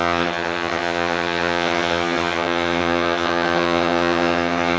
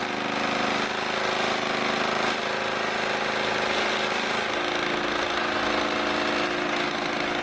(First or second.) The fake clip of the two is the first